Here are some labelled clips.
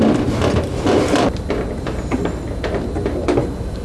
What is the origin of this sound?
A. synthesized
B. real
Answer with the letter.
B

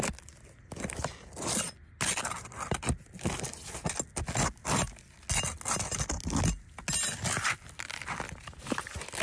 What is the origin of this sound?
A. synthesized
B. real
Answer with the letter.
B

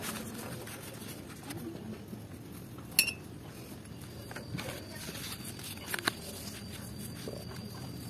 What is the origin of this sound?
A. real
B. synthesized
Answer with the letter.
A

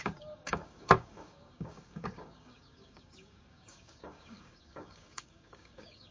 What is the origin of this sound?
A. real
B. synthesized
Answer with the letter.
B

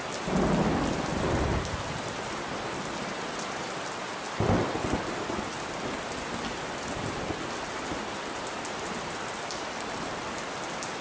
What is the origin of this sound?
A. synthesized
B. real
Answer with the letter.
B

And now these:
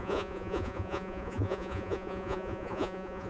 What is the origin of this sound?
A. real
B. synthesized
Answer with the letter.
B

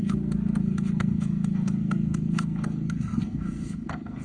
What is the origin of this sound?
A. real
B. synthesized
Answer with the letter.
B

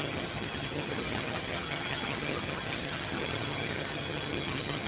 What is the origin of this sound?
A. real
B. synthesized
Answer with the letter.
B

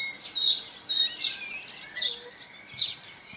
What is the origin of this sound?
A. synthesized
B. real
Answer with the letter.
B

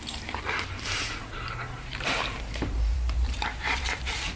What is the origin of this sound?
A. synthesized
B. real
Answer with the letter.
A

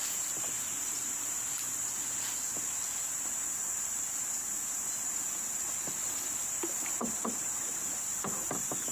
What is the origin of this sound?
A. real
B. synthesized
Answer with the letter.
B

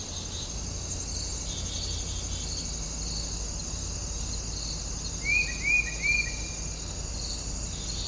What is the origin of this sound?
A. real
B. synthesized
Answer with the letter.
A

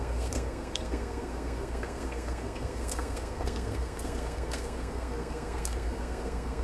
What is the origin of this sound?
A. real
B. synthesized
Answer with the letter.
B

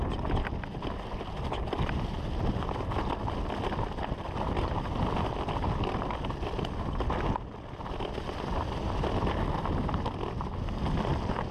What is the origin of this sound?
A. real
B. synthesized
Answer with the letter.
A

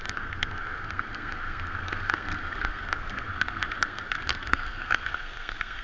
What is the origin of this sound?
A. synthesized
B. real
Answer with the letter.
A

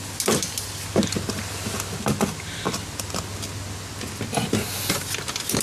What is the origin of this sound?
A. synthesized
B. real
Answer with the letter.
B